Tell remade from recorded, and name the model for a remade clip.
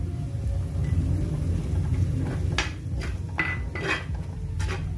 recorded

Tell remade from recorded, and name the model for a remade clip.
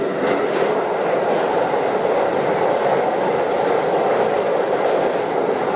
recorded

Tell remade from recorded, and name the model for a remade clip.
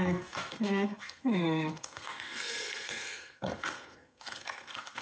remade, codec, SNAC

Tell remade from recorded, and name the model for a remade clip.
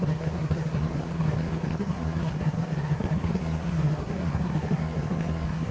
remade, codec, SNAC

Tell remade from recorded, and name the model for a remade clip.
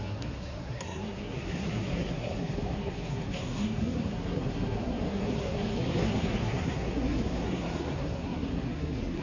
remade, codec, SNAC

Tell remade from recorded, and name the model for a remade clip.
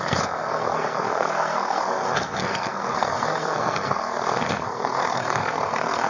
remade, codec, SNAC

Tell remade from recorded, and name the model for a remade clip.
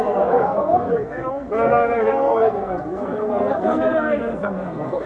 remade, codec, SNAC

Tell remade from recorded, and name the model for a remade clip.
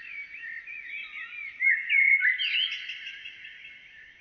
recorded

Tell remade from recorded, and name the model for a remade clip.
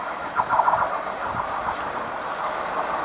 recorded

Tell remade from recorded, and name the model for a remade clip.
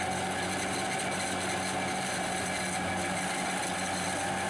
recorded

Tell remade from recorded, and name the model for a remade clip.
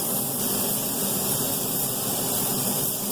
recorded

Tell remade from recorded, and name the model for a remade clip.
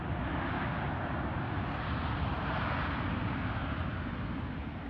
recorded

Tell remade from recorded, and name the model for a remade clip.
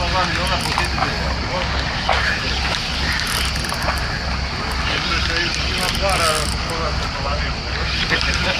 recorded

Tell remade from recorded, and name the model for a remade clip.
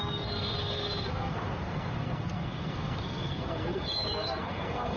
remade, codec, SNAC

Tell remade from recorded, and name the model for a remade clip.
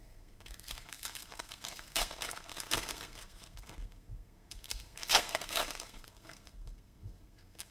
remade, codec, SNAC